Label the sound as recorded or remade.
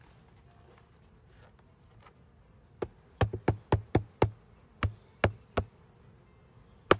recorded